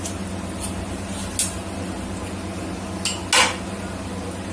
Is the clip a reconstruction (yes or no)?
no